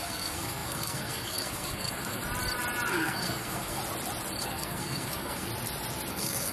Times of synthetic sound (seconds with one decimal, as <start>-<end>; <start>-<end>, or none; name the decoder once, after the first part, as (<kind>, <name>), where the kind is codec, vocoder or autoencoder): 0.0-2.2 (codec, SNAC); 2.9-3.8; 4.4-5.5; 6.1-6.5